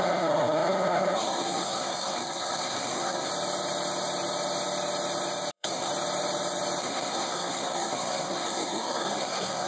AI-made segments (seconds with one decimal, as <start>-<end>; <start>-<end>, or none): 0.0-3.3; 5.5-5.9; 6.8-9.7

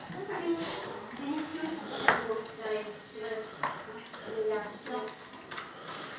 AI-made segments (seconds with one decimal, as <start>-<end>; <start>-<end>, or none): none

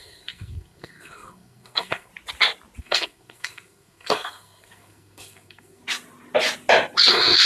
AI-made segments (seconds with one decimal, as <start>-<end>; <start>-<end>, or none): 0.0-2.1; 2.8-5.8; 7.1-7.5

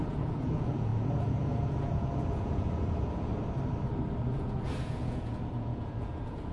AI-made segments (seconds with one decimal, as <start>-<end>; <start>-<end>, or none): 0.0-3.3; 4.2-6.5

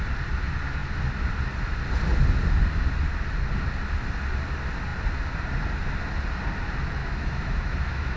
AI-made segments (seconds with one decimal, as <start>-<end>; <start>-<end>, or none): 7.0-8.2

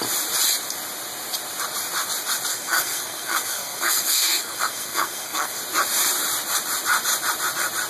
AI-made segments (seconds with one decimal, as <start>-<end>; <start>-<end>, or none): 2.5-5.6

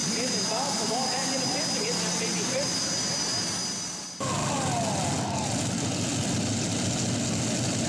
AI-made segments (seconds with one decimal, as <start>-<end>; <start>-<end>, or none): none